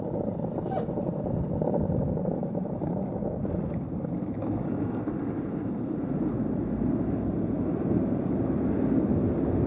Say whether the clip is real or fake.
real